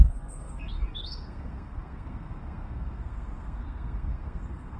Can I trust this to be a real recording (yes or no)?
no